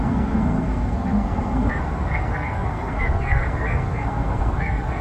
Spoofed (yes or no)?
yes